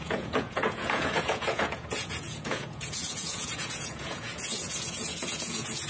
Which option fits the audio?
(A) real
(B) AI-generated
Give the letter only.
B